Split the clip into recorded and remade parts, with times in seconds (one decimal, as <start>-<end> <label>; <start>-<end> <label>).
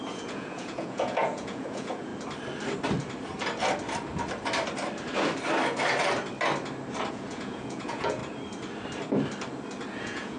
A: 0.0-2.1 remade; 2.1-7.1 recorded; 7.1-8.2 remade; 8.2-10.0 recorded; 10.0-10.4 remade